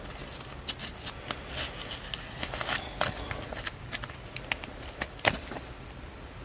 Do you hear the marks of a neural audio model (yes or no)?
no